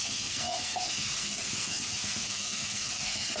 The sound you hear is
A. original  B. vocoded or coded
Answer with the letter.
B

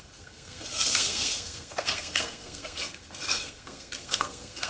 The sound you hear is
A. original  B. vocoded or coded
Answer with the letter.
B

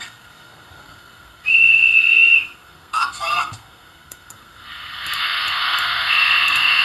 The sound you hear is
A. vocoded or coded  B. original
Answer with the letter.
A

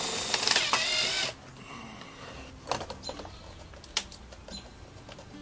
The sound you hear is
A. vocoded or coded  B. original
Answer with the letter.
B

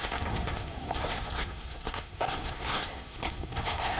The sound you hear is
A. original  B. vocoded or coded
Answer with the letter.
B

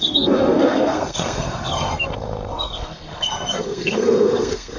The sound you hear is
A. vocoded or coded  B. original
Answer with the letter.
A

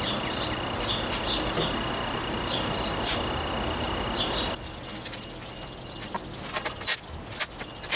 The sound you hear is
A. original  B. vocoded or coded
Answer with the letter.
A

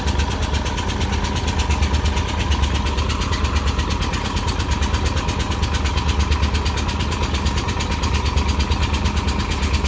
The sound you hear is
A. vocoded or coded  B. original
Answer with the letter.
B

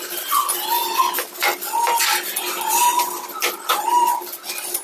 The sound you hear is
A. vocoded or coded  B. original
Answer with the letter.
B